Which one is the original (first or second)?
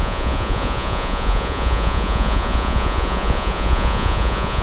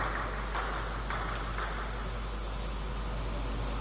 second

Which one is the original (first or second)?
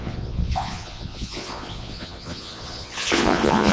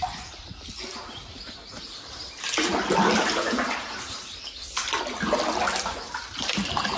second